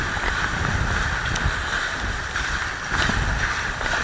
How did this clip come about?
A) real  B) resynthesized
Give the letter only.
A